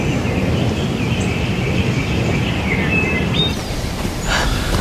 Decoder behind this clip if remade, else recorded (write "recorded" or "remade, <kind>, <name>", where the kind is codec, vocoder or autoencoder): recorded